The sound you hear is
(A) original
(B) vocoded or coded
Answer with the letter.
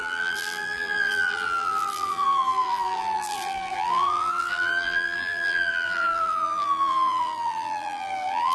B